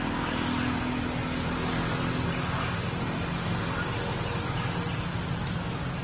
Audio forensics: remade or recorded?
recorded